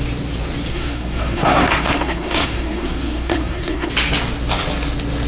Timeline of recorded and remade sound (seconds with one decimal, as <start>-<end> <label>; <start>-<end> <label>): 0.0-0.7 recorded; 0.7-3.9 remade; 3.9-5.3 recorded